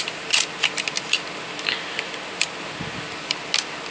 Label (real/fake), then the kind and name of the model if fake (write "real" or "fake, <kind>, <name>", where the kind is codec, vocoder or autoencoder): real